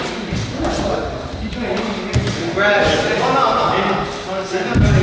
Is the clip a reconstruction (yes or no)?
no